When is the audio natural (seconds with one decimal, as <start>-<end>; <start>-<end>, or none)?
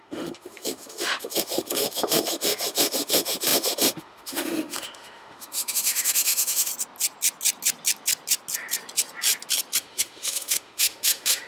6.7-9.8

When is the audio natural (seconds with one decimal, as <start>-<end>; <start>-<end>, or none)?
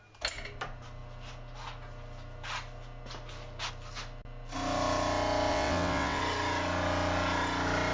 0.0-5.5; 6.2-7.9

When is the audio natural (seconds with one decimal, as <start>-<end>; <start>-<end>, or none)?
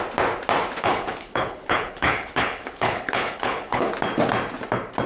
0.0-0.8; 3.9-5.1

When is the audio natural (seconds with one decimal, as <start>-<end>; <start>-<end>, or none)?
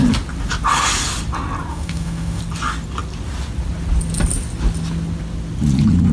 0.0-1.7; 2.4-6.1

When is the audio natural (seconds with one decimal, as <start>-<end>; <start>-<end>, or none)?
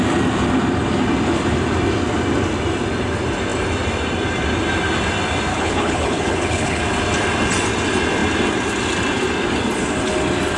0.0-5.5; 6.8-10.6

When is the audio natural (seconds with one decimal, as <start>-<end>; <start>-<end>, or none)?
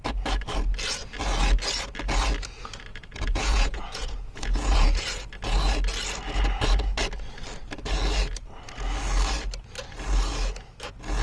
0.0-2.9; 5.0-11.2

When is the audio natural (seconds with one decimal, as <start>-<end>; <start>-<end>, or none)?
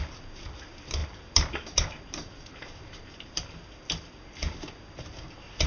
0.0-5.7